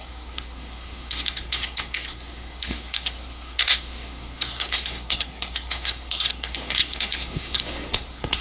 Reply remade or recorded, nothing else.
remade